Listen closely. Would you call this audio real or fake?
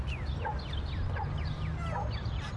real